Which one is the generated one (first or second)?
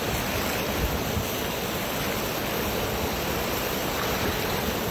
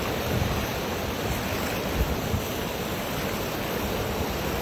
second